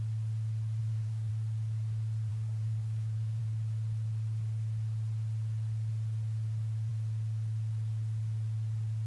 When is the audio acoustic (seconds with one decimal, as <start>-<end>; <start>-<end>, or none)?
0.0-0.8; 1.3-2.3; 3.4-9.1